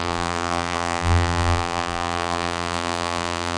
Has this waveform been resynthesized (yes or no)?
yes